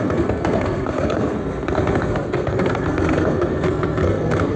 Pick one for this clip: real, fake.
fake